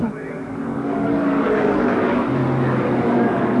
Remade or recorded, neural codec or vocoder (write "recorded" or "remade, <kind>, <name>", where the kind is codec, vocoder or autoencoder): remade, codec, DAC